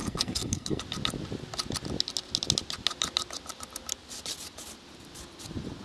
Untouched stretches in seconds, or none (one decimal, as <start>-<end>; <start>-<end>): 0.8-5.8